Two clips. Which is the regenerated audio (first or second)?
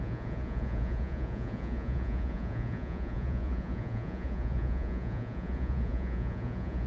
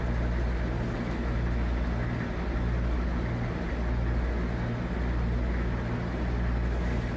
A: first